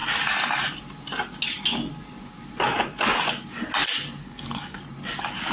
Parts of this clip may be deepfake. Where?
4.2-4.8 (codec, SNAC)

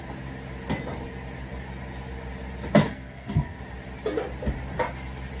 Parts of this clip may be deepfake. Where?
2.8-3.6 (codec, SNAC)

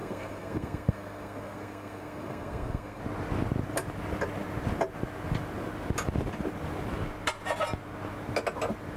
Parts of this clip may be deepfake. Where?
0.0-3.0 (codec, SNAC)

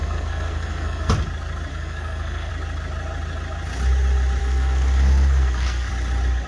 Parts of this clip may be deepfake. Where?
0.0-1.1 (codec, SNAC); 1.7-2.5; 4.4-5.9

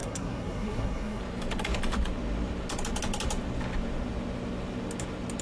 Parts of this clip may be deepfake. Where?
0.0-1.2 (codec, SNAC)